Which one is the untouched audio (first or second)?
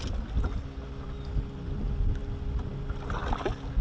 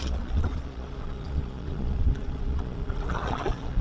first